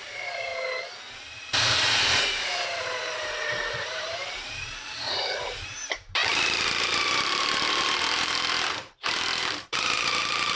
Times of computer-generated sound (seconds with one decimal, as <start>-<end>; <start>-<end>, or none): 0.0-0.5; 1.1-6.2; 6.8-10.6